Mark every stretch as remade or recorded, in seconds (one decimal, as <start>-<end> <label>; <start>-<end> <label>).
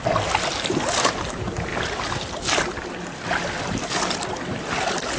0.0-5.2 recorded